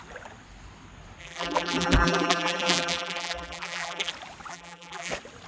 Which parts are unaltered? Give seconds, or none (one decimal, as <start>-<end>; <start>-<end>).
0.0-1.2; 4.1-4.5; 5.1-5.5